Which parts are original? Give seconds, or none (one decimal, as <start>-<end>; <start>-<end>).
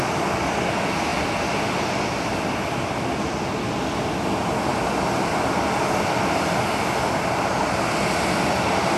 0.0-1.1; 1.9-9.0